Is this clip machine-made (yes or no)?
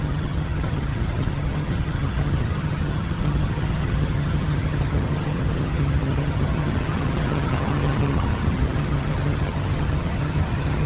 yes